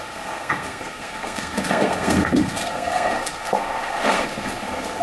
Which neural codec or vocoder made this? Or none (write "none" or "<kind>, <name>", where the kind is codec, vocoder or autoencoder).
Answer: codec, SNAC